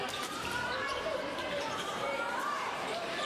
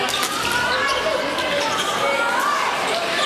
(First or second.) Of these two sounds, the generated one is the first